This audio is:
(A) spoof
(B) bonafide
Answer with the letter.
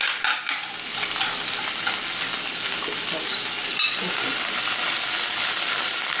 B